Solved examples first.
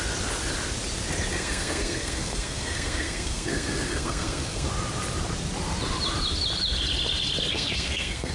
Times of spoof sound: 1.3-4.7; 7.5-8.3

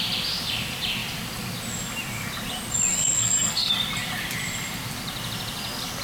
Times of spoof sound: 2.9-3.7

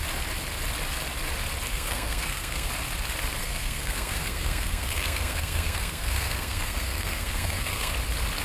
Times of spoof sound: 1.7-2.7; 3.4-7.9

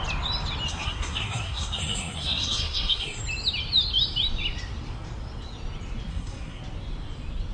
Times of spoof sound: 0.7-3.2; 6.1-6.6

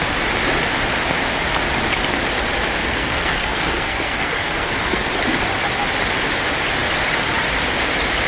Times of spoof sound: 2.8-5.1

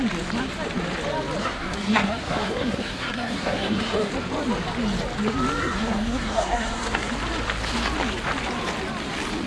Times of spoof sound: 1.4-4.1; 5.6-7.1